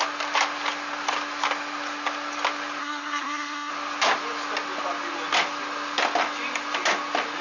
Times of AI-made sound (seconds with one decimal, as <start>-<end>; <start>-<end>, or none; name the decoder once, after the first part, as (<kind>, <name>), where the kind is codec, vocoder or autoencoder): 2.8-3.7 (codec, SNAC)